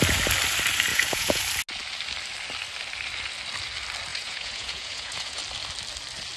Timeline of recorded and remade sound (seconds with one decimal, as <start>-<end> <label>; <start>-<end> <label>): 0.0-0.9 recorded; 0.9-1.4 remade; 1.4-4.1 recorded; 4.1-5.4 remade; 5.4-6.4 recorded